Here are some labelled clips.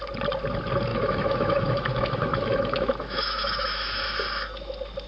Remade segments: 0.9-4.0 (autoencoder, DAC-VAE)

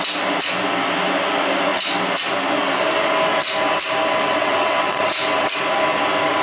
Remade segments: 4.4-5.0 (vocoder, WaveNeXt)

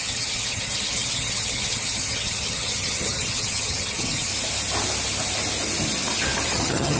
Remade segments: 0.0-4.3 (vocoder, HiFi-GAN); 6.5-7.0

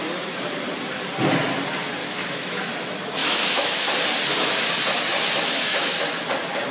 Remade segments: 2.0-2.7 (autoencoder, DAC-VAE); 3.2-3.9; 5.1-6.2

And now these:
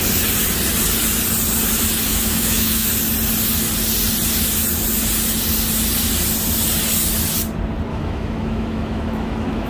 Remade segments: 2.1-2.9 (autoencoder, DAC-VAE); 7.9-9.7